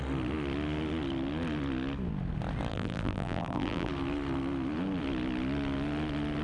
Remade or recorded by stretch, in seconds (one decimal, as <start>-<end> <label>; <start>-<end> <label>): 0.0-2.7 recorded; 2.7-3.9 remade; 3.9-6.4 recorded